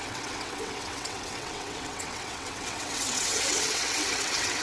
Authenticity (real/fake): fake